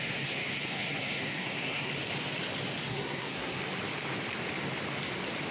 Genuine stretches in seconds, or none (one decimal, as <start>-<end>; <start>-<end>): 1.9-2.8; 3.6-5.5